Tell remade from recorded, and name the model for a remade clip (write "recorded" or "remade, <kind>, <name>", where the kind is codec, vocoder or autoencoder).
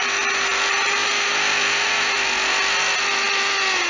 recorded